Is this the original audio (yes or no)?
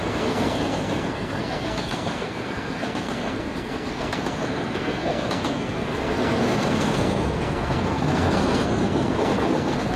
no